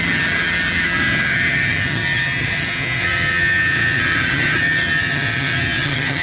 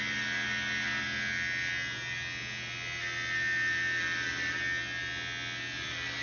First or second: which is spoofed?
first